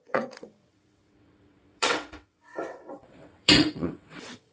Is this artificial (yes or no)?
yes